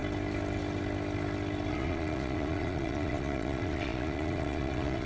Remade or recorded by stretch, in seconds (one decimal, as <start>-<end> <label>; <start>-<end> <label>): 0.0-1.7 recorded; 1.7-5.1 remade